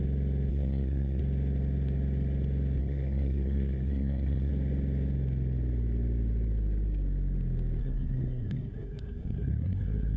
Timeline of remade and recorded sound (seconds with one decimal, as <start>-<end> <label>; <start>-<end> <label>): 0.0-0.5 recorded; 0.5-1.2 remade; 1.2-2.8 recorded; 2.8-4.5 remade; 4.5-7.8 recorded; 7.8-10.2 remade